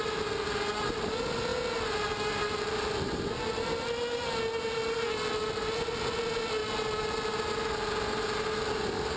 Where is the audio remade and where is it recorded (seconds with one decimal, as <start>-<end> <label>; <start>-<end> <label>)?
0.0-9.2 recorded